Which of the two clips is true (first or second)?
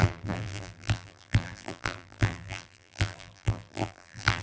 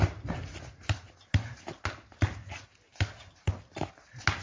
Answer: second